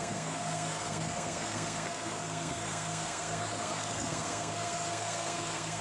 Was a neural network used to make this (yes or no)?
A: yes